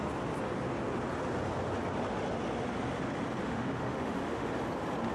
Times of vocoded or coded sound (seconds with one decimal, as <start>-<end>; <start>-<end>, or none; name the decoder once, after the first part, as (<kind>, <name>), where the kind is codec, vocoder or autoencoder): 3.4-4.5 (autoencoder, DAC-VAE)